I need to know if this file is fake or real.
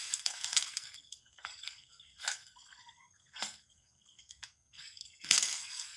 fake